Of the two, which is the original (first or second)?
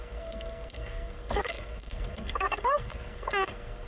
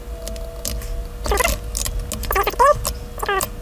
second